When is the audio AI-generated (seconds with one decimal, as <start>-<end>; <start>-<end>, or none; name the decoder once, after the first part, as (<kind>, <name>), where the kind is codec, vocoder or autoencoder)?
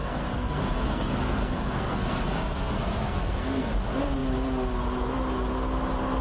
0.0-3.7 (codec, SNAC)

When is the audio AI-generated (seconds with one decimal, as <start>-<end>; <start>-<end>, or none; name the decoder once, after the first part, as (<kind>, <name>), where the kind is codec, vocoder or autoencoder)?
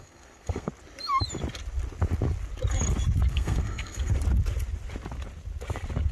0.0-0.7 (codec, SNAC); 3.3-4.1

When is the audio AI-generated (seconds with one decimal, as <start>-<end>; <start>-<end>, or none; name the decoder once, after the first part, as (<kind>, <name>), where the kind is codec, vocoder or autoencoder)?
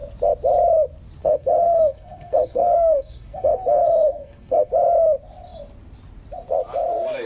1.2-4.7 (codec, SNAC)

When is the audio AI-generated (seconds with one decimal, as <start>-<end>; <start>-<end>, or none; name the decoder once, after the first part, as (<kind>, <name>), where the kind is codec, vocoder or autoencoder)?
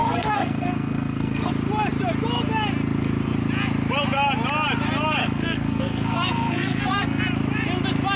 0.0-1.5 (codec, SNAC); 5.2-7.2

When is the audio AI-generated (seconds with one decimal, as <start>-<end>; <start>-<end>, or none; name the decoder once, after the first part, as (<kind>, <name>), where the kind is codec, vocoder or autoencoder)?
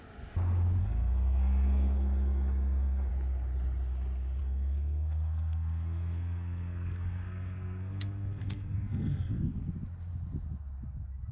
0.8-3.1 (codec, SNAC); 4.4-9.6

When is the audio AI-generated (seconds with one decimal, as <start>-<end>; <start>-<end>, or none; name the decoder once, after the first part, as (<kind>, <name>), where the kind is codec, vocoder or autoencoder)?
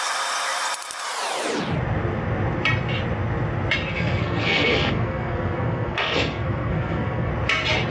3.9-7.3 (codec, SNAC)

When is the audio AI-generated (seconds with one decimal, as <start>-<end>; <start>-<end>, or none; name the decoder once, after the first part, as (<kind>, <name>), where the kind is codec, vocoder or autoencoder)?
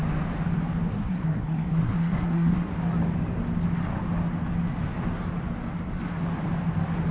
0.9-2.7 (codec, SNAC)